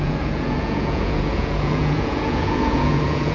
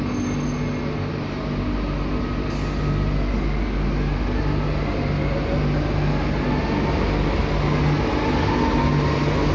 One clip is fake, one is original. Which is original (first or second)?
second